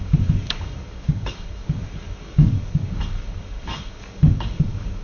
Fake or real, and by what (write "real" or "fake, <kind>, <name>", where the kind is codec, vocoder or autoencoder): fake, codec, DAC